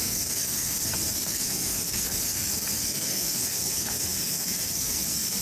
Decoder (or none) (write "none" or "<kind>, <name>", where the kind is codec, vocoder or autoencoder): codec, SNAC